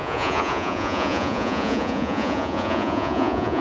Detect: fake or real fake